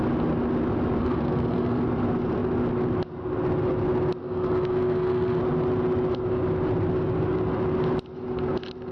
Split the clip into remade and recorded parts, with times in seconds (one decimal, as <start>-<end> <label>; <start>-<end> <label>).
0.0-1.0 recorded; 1.0-1.8 remade; 1.8-4.2 recorded; 4.2-5.4 remade; 5.4-8.9 recorded